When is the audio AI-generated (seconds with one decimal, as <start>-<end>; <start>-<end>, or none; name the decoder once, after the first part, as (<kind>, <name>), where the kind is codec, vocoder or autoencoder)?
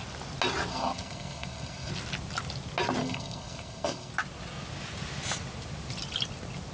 0.7-1.9 (codec, SNAC); 3.0-4.1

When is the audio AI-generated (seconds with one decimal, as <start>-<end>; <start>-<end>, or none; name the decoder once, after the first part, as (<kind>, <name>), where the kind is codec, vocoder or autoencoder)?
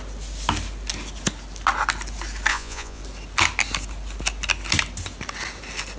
2.5-3.0 (vocoder, Vocos)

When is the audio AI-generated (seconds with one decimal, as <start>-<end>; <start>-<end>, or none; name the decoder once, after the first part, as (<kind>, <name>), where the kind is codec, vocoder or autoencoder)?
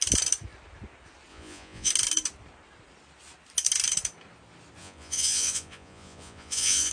1.3-1.9 (vocoder, Vocos); 4.8-6.9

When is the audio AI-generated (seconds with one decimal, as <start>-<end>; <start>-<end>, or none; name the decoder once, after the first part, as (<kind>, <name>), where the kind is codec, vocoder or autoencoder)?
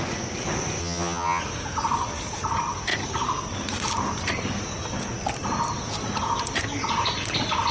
0.8-1.4 (vocoder, HiFi-GAN)